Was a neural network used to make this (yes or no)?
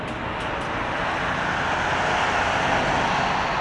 no